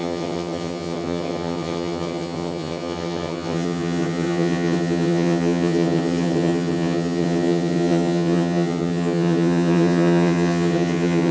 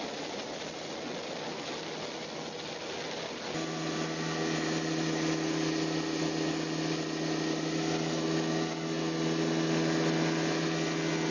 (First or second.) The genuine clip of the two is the second